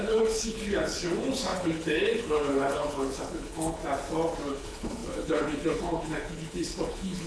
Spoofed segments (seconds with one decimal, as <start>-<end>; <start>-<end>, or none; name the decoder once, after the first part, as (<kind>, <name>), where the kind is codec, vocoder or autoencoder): 0.0-3.8 (codec, HILCodec); 4.5-7.3